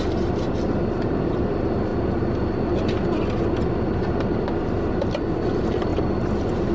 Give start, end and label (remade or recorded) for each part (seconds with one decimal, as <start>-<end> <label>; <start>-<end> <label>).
0.0-1.9 remade; 1.9-4.9 recorded; 4.9-5.9 remade; 5.9-6.7 recorded